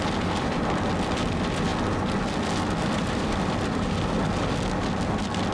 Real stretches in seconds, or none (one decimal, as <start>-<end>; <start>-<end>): 0.0-5.5